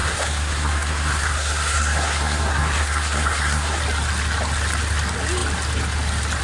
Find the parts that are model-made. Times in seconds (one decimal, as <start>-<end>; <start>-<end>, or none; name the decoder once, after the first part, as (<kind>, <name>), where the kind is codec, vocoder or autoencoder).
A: 0.0-3.8 (codec, SNAC)